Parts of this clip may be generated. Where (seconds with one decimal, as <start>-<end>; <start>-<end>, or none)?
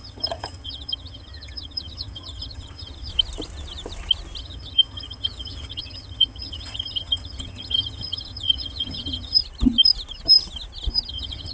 0.0-3.1; 4.4-9.4; 11.1-11.5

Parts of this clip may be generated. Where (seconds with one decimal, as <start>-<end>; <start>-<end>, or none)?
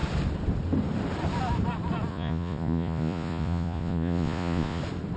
2.1-4.8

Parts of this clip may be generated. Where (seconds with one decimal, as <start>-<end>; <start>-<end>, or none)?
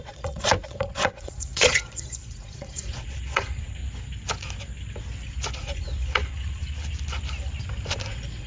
0.0-3.8; 5.5-6.6; 8.1-8.5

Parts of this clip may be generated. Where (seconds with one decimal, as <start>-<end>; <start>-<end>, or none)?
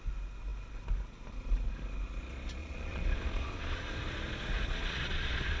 2.6-5.6